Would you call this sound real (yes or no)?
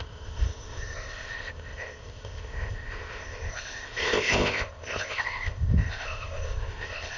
no